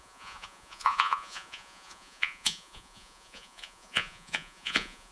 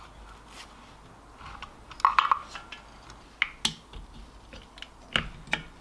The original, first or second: second